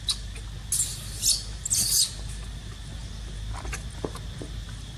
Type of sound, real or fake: real